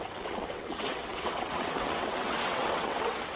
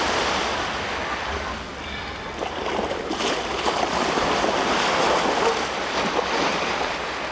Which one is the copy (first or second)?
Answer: first